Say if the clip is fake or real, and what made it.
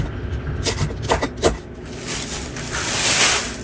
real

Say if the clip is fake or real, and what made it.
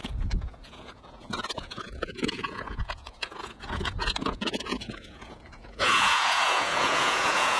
fake, vocoder, Vocos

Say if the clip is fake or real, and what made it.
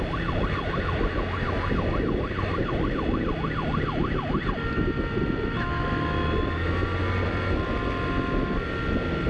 real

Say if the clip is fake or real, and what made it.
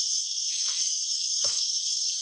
fake, codec, SNAC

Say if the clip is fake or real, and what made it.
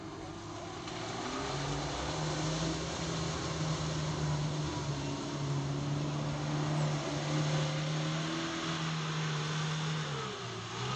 real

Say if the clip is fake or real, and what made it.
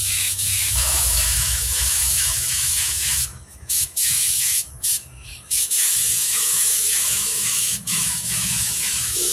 fake, autoencoder, DAC-VAE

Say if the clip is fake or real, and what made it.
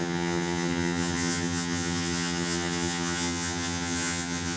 fake, vocoder, HiFi-GAN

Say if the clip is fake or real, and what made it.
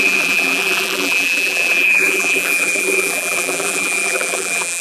fake, vocoder, BigVGAN v2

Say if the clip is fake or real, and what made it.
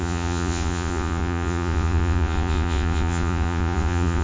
fake, vocoder, Vocos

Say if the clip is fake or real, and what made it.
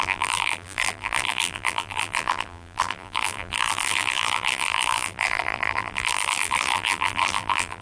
fake, vocoder, BigVGAN v2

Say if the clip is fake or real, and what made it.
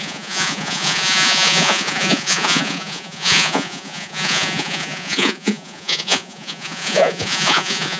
fake, vocoder, Vocos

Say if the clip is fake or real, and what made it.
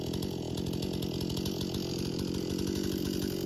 real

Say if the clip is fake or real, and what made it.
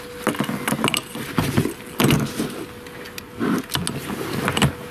real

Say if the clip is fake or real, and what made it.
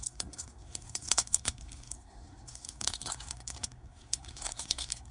fake, codec, SNAC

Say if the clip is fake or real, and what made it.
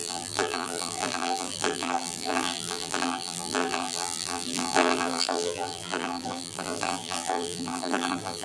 fake, vocoder, BigVGAN v2